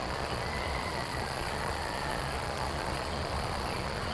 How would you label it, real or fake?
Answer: fake